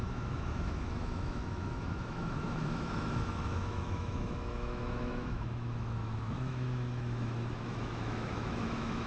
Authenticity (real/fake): fake